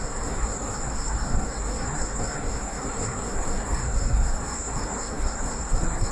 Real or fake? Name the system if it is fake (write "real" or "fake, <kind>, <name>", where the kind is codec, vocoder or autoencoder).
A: fake, codec, SNAC